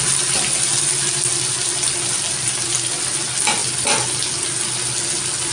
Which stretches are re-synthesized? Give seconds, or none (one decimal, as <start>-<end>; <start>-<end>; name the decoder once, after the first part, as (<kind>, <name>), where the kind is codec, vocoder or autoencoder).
none